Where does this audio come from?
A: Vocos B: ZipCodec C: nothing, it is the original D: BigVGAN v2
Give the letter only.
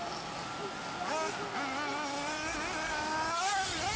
C